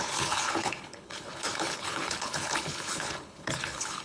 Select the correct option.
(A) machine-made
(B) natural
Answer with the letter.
A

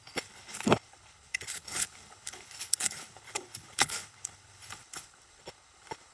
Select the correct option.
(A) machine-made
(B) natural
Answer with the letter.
A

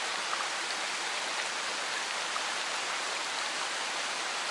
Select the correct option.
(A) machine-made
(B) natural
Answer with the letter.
B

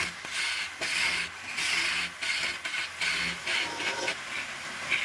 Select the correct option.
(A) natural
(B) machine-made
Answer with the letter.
A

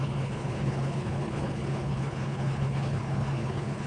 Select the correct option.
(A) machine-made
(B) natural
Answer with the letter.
A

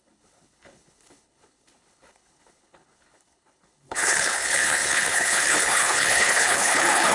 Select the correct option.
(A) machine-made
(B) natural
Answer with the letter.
A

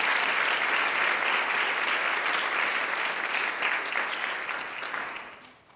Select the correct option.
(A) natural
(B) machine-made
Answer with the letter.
A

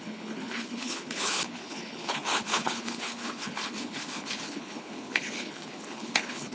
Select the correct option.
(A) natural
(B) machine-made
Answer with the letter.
B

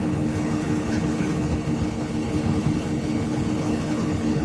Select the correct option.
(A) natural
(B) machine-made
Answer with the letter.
B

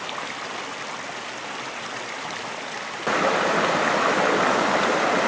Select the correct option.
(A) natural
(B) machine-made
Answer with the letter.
A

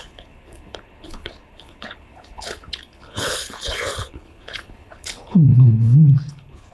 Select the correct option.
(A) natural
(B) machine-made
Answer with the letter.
B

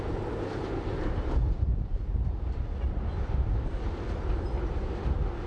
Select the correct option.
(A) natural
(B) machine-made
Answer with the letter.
A